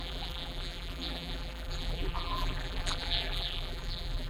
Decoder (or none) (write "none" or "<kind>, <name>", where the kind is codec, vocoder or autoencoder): vocoder, BigVGAN v2